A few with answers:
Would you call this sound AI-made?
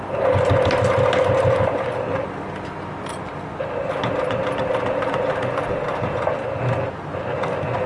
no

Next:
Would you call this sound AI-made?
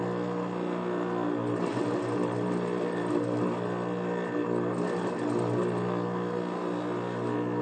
no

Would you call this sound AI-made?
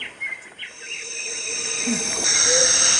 no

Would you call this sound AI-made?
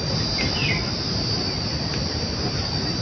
no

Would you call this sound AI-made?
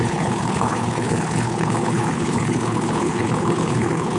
yes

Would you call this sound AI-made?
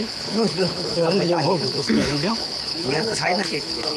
yes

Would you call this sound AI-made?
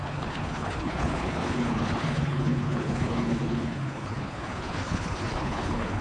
yes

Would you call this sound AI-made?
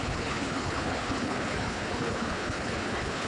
yes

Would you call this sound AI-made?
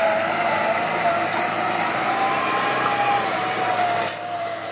no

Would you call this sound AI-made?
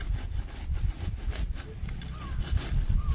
no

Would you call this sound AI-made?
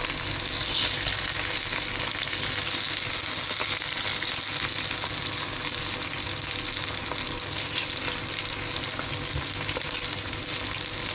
no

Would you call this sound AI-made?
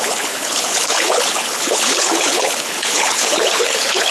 yes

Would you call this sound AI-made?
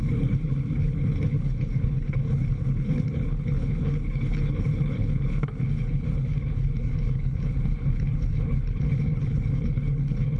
yes